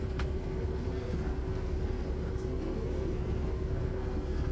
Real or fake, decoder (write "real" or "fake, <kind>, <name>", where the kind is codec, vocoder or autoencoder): fake, codec, SNAC